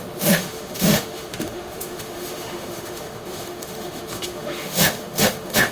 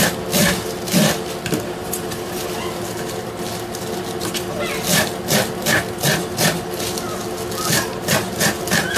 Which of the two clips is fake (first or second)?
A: first